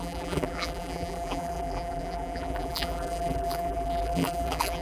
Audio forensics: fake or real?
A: fake